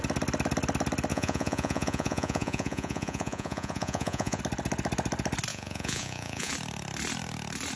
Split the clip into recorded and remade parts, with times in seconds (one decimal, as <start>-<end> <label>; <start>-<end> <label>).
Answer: 0.0-1.1 recorded; 1.1-4.4 remade; 4.4-5.5 recorded; 5.5-6.5 remade; 6.5-7.8 recorded